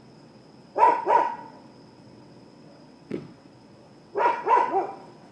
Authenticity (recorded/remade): remade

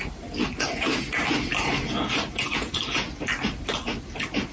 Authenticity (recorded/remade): recorded